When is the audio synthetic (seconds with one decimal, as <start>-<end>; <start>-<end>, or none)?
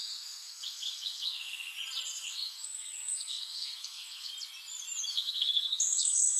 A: 0.0-1.7; 2.2-4.3; 5.1-6.4